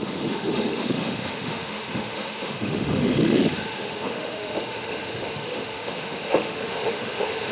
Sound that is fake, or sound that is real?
fake